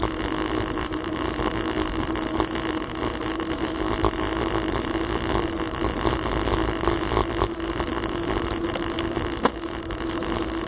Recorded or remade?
recorded